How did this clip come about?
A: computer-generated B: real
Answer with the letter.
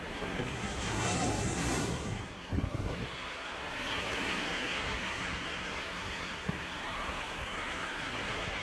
A